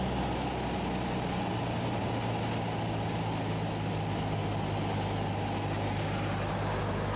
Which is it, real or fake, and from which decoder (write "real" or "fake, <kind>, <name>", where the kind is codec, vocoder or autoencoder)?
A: real